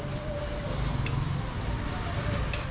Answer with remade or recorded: recorded